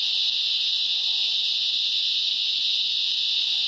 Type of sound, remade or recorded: recorded